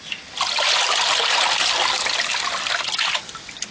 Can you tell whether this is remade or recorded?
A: recorded